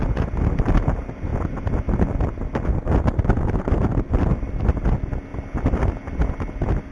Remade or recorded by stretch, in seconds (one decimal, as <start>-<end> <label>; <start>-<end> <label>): 0.0-6.9 recorded